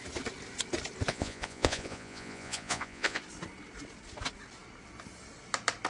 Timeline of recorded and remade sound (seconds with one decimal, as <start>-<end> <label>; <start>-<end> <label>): 0.0-1.1 recorded; 1.1-3.2 remade; 3.2-5.9 recorded